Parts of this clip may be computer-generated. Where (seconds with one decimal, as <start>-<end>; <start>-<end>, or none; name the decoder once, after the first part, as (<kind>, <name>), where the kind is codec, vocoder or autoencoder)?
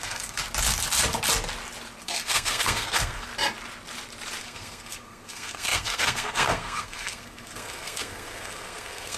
0.0-0.4 (codec, SNAC); 2.0-3.3; 4.4-9.2